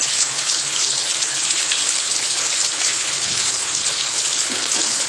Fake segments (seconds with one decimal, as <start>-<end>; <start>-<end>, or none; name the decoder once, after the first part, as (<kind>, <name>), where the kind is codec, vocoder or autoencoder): 0.0-5.1 (codec, HILCodec)